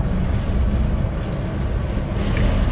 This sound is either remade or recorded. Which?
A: recorded